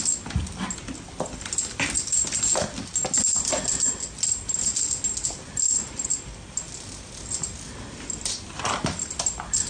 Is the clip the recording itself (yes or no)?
yes